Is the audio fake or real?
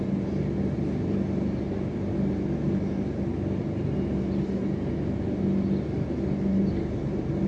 real